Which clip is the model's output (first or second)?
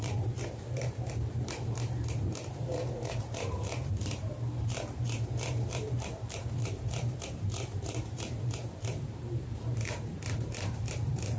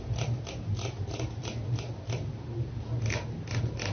first